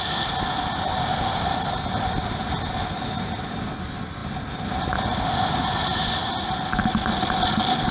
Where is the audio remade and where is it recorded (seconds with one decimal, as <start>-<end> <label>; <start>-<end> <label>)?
0.0-7.9 recorded